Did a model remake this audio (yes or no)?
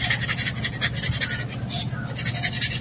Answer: no